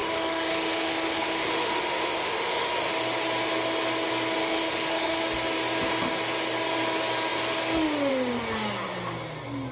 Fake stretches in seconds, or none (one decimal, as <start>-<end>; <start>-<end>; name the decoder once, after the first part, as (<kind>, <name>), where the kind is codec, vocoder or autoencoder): 0.0-2.9 (autoencoder, DAC-VAE); 4.4-5.2